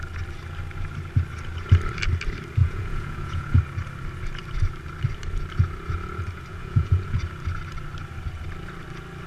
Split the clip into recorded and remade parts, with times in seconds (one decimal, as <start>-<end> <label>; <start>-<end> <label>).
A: 0.0-2.6 recorded; 2.6-3.6 remade; 3.6-6.5 recorded; 6.5-7.2 remade; 7.2-9.3 recorded